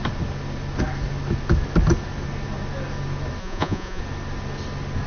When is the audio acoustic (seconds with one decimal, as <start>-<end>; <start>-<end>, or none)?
0.0-3.4; 4.0-5.1